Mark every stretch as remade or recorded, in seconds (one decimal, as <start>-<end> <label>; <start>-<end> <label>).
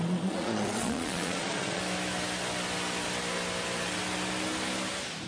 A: 0.0-1.8 remade; 1.8-5.3 recorded